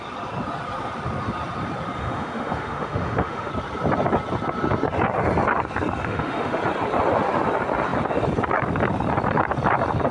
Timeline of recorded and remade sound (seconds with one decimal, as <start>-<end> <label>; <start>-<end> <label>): 0.0-2.0 recorded; 2.0-3.5 remade; 3.5-6.0 recorded; 6.0-6.6 remade; 6.6-10.1 recorded